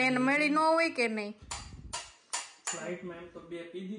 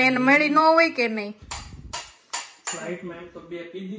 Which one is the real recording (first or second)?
first